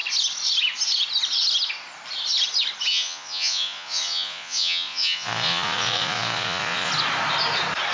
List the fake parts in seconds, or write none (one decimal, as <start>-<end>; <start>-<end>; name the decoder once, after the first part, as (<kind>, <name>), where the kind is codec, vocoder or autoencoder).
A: 2.9-6.9 (vocoder, Vocos)